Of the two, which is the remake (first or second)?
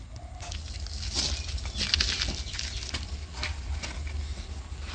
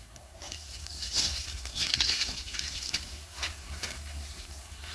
second